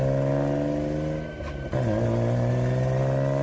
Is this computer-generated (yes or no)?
no